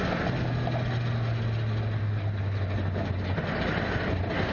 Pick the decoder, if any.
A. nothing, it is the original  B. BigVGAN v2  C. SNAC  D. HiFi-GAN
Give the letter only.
A